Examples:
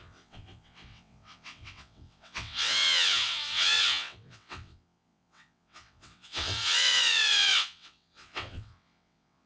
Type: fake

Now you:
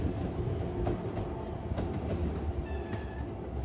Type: real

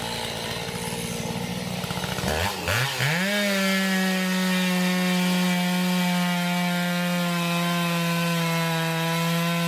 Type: real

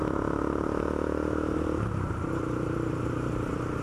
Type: fake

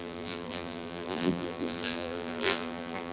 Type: fake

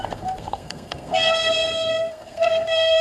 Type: fake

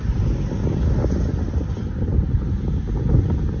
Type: real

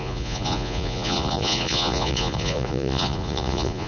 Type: fake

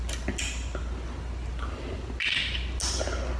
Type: real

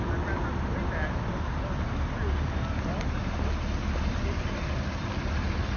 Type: real